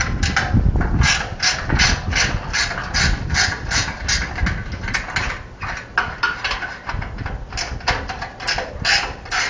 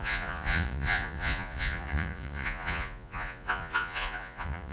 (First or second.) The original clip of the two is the first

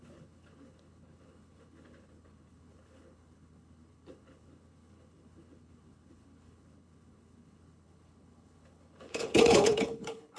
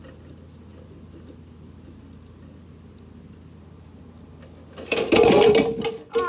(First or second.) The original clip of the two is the second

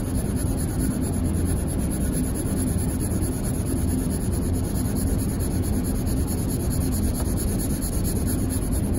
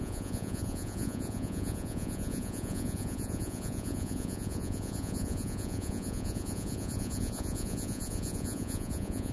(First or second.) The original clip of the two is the first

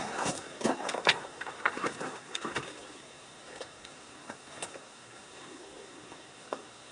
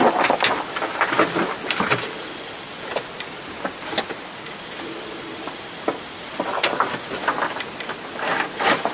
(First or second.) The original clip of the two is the second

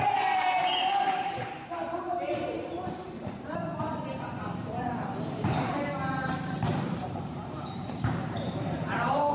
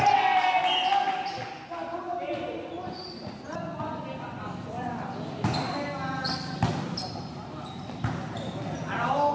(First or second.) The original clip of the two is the second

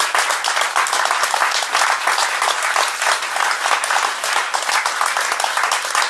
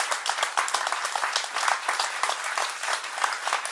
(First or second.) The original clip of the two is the first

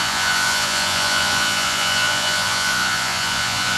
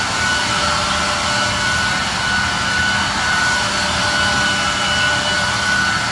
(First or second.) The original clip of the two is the second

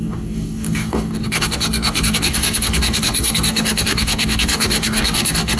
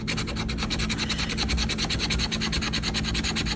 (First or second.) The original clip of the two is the second